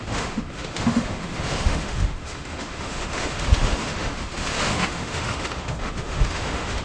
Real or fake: fake